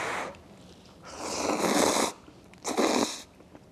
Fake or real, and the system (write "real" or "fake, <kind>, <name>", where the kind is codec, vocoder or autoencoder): real